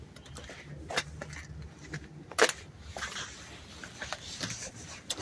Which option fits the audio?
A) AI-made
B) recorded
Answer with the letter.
B